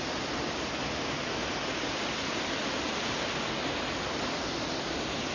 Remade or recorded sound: recorded